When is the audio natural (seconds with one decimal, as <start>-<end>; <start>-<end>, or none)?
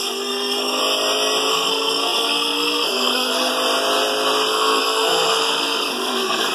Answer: 0.8-1.5; 3.5-4.5